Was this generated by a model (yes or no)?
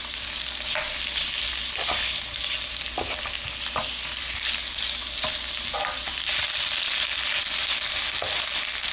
no